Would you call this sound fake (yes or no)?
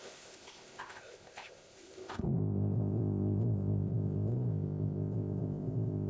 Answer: yes